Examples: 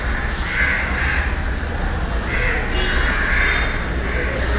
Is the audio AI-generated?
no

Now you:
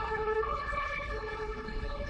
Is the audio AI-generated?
yes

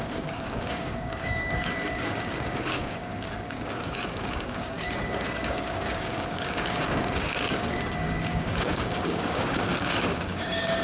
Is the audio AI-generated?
yes